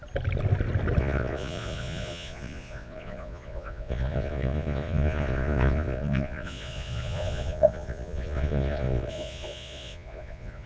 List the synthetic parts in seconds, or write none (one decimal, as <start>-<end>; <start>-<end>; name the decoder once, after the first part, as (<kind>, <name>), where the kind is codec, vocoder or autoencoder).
1.0-10.7 (vocoder, Vocos)